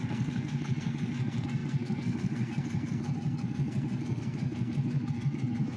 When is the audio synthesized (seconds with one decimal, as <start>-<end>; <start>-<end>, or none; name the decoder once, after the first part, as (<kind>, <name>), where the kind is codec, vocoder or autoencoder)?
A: 0.0-5.8 (codec, SNAC)